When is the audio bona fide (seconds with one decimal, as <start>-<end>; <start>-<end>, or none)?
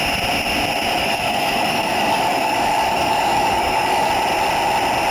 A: 0.0-1.0; 4.1-5.1